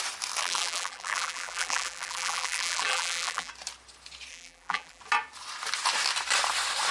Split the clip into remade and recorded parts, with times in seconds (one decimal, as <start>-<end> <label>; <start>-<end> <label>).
0.0-0.4 recorded; 0.4-3.5 remade; 3.5-4.3 recorded; 4.3-5.0 remade; 5.0-6.9 recorded